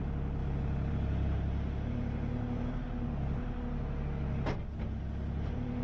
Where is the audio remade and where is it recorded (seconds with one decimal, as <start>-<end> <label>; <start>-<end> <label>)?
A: 0.0-5.8 recorded